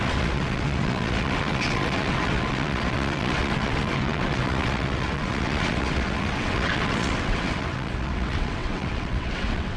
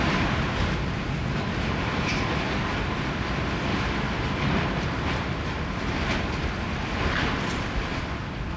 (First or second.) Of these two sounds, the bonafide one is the second